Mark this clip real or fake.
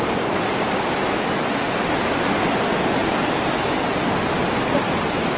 real